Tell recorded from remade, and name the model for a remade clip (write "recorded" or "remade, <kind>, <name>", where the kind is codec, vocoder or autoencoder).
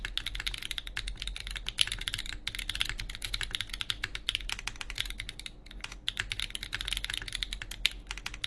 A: recorded